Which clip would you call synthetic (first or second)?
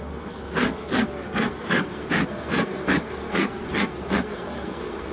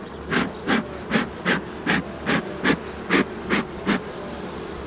first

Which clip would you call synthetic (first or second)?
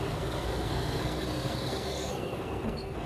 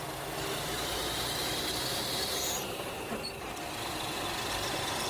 first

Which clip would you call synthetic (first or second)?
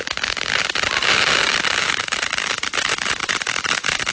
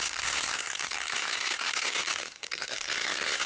second